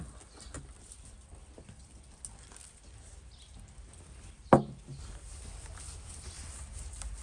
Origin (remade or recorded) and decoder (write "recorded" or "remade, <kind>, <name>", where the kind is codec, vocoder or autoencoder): recorded